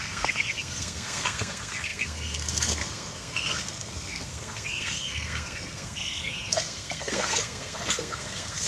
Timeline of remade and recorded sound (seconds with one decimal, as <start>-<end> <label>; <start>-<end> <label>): 0.0-8.7 remade